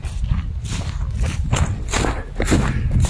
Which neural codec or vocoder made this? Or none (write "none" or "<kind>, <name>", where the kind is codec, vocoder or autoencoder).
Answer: none